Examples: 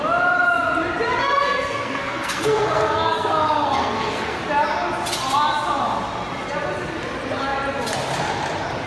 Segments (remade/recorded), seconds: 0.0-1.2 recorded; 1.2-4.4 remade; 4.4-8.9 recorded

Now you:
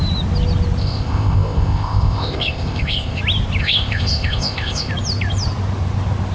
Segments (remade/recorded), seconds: 0.0-0.8 recorded; 0.8-3.2 remade; 3.2-3.6 recorded; 3.6-4.9 remade; 4.9-6.3 recorded

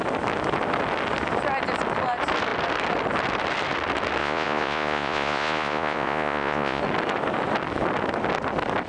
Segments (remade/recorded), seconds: 0.0-4.2 recorded; 4.2-6.8 remade; 6.8-8.9 recorded